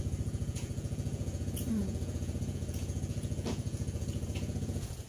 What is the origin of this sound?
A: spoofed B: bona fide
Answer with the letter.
A